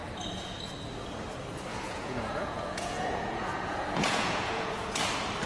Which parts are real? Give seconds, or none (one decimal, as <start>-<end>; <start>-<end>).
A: 0.0-1.7; 5.0-5.5